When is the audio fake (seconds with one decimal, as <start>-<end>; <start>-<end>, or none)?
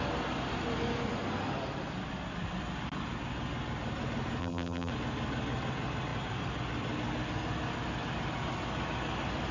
4.4-4.9